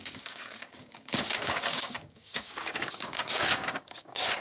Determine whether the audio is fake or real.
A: fake